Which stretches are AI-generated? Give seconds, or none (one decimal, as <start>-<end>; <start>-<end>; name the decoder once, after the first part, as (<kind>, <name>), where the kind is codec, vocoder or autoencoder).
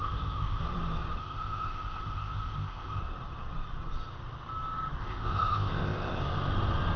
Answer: 0.0-0.6 (codec, ZipCodec); 1.2-3.0; 5.0-6.2